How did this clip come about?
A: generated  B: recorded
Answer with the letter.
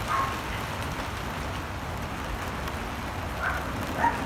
B